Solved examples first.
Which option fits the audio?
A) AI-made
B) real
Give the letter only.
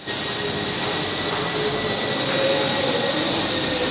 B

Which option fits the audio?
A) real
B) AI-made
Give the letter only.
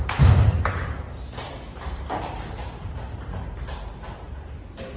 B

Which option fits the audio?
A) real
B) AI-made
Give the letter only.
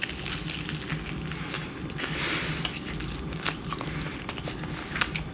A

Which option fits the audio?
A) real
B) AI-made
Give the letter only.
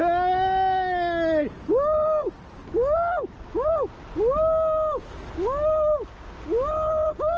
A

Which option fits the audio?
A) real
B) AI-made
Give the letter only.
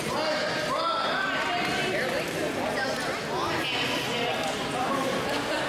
A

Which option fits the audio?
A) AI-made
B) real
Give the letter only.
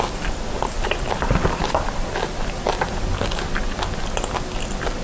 B